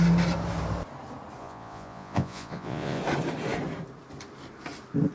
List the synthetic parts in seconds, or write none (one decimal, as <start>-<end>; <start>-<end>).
1.4-3.0